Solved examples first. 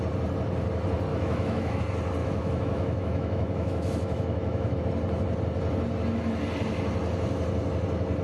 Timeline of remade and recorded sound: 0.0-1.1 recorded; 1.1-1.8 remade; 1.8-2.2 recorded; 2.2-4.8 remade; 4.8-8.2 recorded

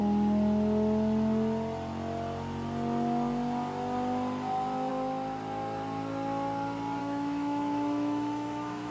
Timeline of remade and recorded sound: 0.0-7.0 recorded; 7.0-8.9 remade

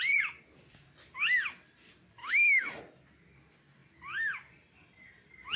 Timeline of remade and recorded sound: 0.0-2.2 recorded; 2.2-2.8 remade; 2.8-5.6 recorded

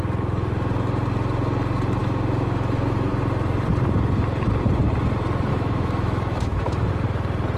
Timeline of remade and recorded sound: 0.0-2.0 recorded; 2.0-3.1 remade; 3.1-5.5 recorded; 5.5-6.9 remade; 6.9-7.6 recorded

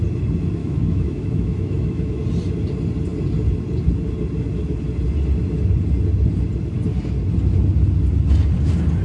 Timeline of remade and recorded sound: 0.0-0.6 recorded; 0.6-2.2 remade; 2.2-9.0 recorded

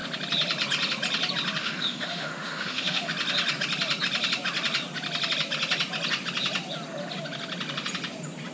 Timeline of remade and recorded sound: 0.0-1.6 recorded; 1.6-3.1 remade; 3.1-8.5 recorded

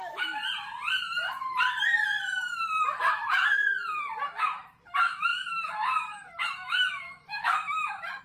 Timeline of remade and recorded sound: 0.0-0.4 remade; 0.4-3.0 recorded; 3.0-3.6 remade; 3.6-4.4 recorded; 4.4-8.2 remade

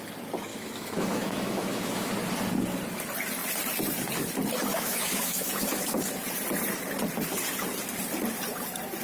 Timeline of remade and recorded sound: 0.0-0.5 recorded; 0.5-2.1 remade; 2.1-4.7 recorded; 4.7-6.1 remade; 6.1-9.0 recorded